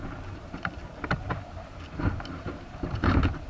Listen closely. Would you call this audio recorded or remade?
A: remade